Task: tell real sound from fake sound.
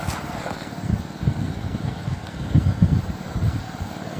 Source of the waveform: fake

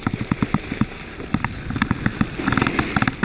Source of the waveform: real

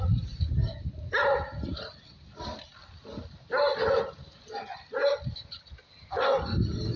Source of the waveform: real